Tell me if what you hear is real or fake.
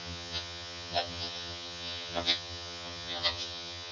fake